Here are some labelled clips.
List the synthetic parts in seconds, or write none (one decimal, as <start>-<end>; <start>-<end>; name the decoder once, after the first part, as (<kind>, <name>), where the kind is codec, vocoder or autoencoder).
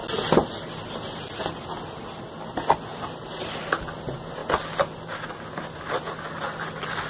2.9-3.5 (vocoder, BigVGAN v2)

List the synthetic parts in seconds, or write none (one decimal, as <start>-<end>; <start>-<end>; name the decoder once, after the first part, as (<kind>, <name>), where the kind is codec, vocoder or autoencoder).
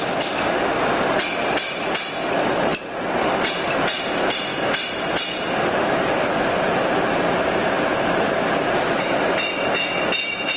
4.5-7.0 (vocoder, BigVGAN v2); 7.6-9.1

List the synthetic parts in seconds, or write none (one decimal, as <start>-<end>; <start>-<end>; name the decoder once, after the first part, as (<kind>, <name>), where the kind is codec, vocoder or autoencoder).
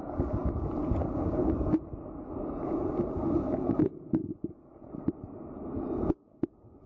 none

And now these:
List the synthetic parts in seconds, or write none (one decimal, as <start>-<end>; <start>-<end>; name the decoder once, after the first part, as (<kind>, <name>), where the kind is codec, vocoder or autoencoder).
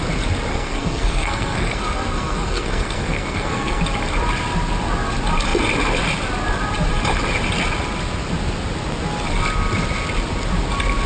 0.5-3.8 (codec, SNAC)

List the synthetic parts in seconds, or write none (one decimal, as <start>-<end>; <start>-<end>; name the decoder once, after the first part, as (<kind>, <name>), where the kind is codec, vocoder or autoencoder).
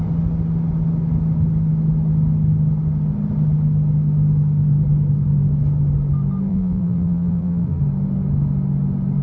6.5-7.8 (vocoder, BigVGAN v2)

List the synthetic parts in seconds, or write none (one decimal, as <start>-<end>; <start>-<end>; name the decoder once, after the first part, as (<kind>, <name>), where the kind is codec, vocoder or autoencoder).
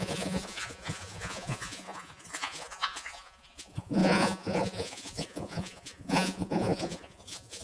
0.0-7.6 (vocoder, Vocos)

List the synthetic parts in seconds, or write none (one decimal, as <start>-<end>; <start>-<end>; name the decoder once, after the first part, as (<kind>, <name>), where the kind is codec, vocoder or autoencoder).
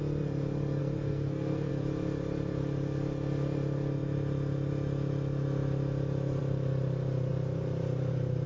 0.8-1.7 (codec, SNAC)